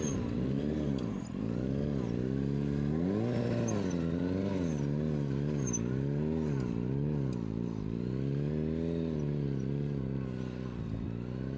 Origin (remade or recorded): recorded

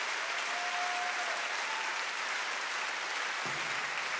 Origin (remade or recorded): recorded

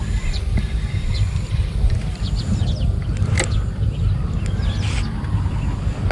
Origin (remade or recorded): remade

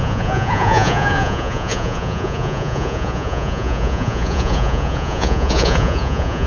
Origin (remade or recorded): remade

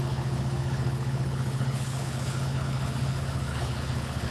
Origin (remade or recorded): remade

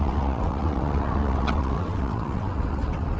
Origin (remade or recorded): remade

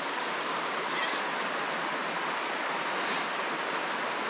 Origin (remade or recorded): recorded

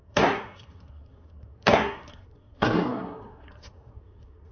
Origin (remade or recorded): remade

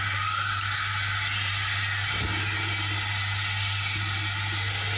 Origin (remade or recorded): recorded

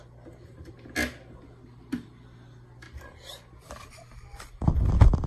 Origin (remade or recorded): recorded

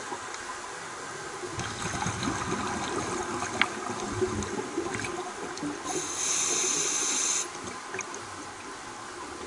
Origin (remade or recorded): recorded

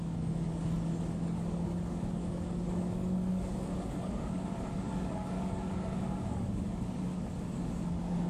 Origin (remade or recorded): remade